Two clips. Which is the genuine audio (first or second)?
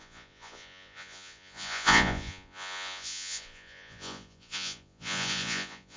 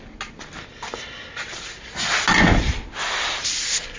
second